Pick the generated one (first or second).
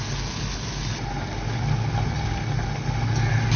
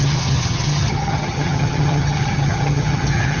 second